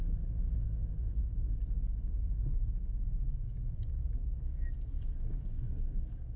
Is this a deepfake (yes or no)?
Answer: yes